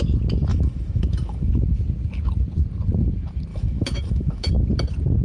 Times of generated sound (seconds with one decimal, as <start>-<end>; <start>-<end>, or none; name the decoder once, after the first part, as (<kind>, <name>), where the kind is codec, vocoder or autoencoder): 0.5-1.5 (autoencoder, DAC-VAE); 3.5-4.5